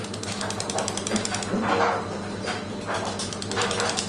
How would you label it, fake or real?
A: real